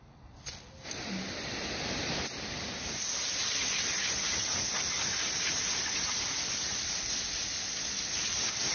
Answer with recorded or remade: recorded